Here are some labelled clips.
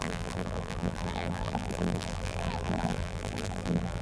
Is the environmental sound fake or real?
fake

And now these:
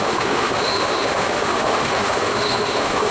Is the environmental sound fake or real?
fake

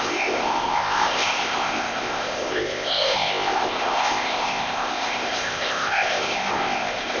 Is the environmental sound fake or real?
fake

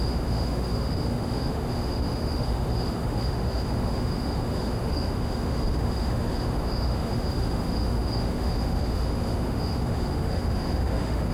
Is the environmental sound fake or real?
fake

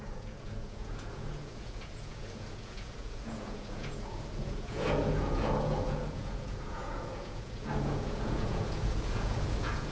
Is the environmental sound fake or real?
fake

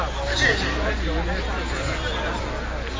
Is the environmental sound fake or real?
real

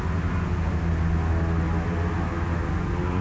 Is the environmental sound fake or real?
real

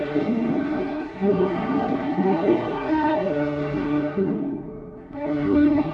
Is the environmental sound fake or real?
fake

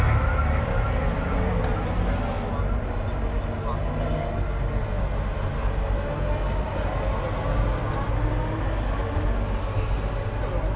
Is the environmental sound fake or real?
real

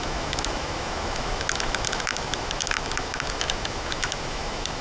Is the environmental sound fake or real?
fake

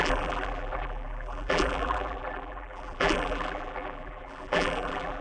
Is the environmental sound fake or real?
fake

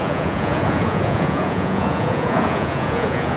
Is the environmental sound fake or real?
fake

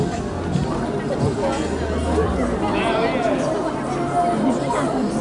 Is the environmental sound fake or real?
real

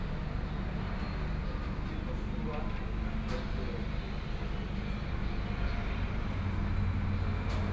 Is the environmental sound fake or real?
real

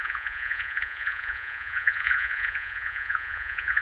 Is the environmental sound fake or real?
fake